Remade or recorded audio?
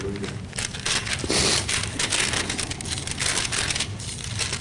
recorded